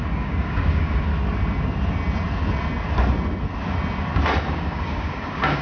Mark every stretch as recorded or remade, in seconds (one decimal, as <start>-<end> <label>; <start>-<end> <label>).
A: 0.0-1.1 remade; 1.1-4.5 recorded; 4.5-5.6 remade